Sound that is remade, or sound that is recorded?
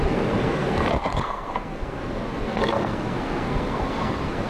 remade